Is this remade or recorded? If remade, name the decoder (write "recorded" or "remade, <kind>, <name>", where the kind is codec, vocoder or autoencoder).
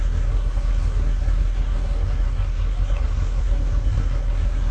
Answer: remade, codec, SNAC